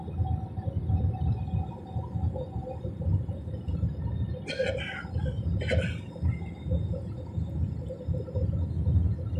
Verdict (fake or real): real